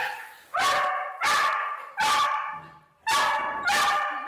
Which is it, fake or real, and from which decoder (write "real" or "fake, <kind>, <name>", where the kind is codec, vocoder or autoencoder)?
real